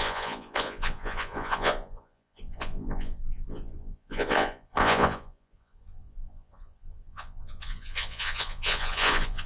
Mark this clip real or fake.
fake